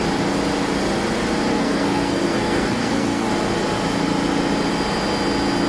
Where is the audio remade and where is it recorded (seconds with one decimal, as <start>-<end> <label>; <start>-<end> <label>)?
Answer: 0.0-1.5 recorded; 1.5-3.3 remade; 3.3-5.7 recorded